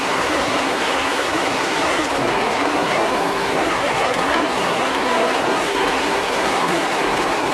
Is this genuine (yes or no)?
no